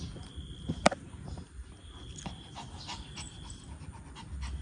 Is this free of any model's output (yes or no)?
yes